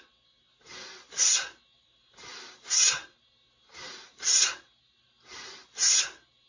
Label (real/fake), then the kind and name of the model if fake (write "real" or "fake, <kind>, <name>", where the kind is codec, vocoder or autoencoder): real